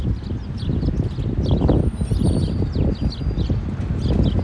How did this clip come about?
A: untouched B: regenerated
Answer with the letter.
A